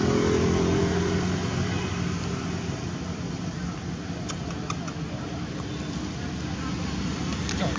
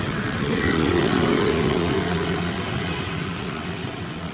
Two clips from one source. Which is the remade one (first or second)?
second